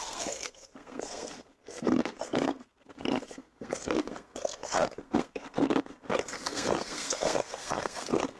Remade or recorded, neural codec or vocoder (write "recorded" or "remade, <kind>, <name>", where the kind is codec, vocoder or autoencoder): remade, codec, SNAC